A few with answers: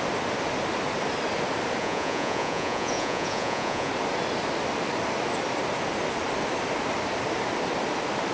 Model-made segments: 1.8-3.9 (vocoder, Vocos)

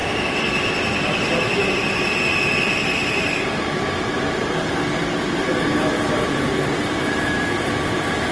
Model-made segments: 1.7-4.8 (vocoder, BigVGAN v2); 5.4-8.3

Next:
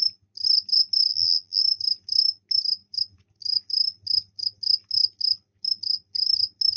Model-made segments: 1.1-1.6 (vocoder, BigVGAN v2)

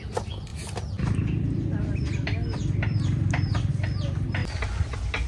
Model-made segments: none

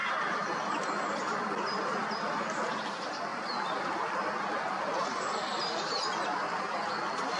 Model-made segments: none